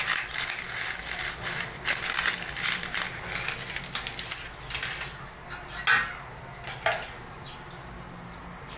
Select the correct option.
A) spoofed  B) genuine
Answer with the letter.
B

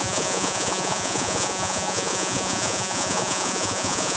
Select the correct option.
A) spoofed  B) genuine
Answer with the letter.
A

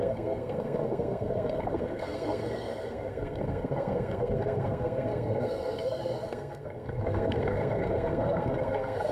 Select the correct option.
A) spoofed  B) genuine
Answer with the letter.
A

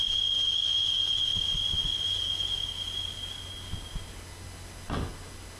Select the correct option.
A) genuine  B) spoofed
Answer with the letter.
A